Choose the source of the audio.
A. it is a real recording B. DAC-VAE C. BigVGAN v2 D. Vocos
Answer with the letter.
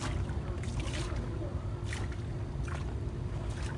C